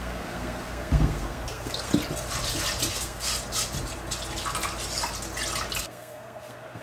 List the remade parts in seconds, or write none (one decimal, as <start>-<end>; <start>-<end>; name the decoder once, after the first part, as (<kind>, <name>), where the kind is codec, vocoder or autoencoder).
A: 0.0-1.9 (codec, SNAC); 2.9-3.3; 5.8-6.8

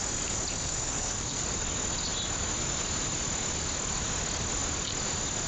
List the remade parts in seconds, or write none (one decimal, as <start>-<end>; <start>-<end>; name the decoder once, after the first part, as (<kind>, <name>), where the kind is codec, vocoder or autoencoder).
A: 0.6-1.4 (codec, SNAC)

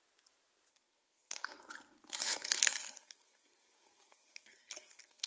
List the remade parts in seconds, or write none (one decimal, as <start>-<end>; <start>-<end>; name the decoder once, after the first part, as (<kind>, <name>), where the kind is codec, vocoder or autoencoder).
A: 0.7-1.6 (codec, SNAC); 2.2-5.3